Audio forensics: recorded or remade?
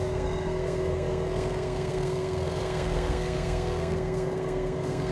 remade